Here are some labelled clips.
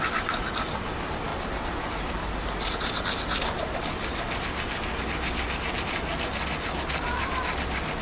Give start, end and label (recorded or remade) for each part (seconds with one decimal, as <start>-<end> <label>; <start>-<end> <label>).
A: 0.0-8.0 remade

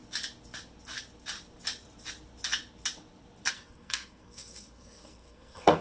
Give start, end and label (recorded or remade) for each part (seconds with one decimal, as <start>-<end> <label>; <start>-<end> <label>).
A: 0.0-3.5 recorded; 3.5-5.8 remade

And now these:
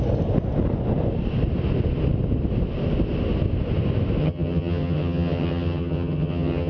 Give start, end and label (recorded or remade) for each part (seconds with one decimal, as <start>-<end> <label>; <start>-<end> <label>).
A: 0.0-4.2 recorded; 4.2-6.7 remade

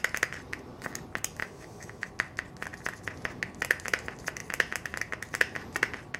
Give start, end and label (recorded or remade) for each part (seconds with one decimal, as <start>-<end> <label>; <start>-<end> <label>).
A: 0.0-1.4 recorded; 1.4-2.1 remade; 2.1-6.2 recorded

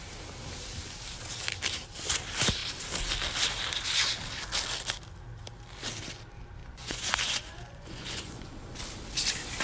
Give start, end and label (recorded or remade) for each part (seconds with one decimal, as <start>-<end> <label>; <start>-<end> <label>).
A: 0.0-6.6 recorded; 6.6-8.5 remade; 8.5-9.6 recorded

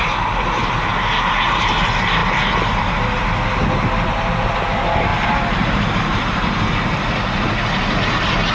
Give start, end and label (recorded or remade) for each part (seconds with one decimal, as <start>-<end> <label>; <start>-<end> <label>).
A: 0.0-5.1 recorded; 5.1-5.8 remade; 5.8-8.5 recorded

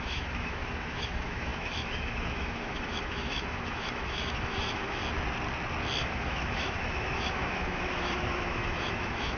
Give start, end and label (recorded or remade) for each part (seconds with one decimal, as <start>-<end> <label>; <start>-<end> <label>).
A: 0.0-5.0 remade; 5.0-6.0 recorded; 6.0-9.4 remade